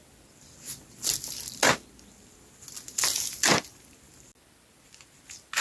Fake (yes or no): no